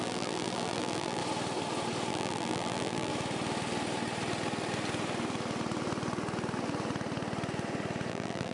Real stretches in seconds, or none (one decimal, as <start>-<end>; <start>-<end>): 1.2-2.1; 3.1-8.1